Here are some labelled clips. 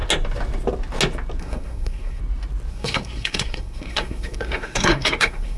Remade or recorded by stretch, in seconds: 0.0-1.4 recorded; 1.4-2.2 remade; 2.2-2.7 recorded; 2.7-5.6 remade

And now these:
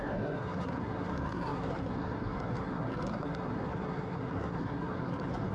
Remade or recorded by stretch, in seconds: 0.0-5.5 remade